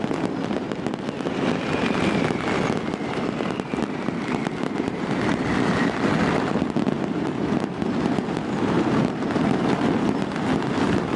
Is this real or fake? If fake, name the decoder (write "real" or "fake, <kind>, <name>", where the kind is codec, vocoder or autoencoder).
fake, vocoder, BigVGAN v2